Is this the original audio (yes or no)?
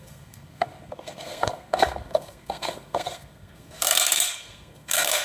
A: no